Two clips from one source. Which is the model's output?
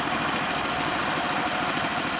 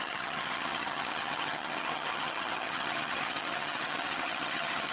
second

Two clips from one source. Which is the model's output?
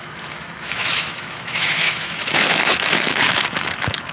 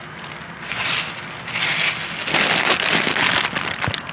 first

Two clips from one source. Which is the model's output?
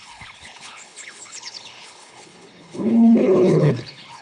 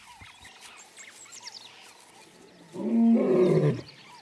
first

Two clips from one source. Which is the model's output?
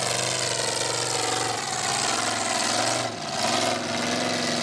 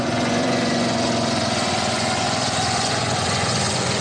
second